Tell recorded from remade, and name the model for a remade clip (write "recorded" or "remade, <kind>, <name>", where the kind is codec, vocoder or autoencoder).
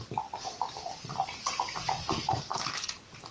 recorded